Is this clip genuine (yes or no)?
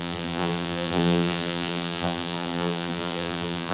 no